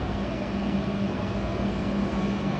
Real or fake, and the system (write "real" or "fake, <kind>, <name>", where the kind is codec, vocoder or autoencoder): fake, codec, SNAC